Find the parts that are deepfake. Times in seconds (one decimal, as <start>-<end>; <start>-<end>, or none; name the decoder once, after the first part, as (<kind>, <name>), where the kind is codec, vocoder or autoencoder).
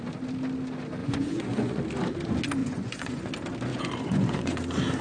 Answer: 1.0-1.8 (vocoder, Vocos); 2.6-3.3; 3.7-4.6